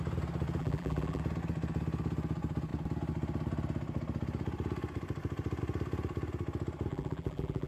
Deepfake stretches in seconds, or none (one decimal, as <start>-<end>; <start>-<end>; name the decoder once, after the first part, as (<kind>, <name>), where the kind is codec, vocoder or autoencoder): 0.6-1.2 (vocoder, BigVGAN v2); 6.9-7.7